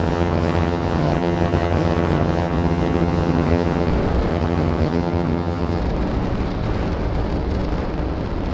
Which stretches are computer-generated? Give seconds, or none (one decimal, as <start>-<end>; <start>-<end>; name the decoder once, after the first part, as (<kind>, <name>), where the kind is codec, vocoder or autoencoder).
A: 0.0-3.9 (vocoder, HiFi-GAN); 4.3-5.8